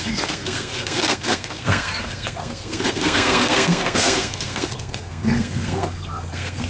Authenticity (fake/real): fake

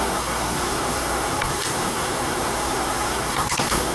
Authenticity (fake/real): fake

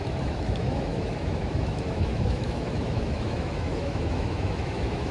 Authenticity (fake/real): fake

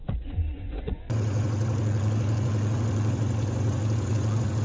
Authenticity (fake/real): fake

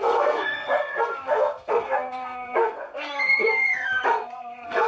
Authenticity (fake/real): fake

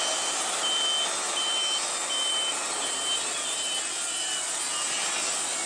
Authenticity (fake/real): real